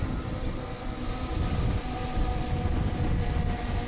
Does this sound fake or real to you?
real